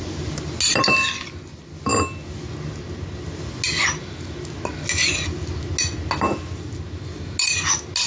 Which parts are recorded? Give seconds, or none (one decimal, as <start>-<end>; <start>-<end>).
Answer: 0.0-8.1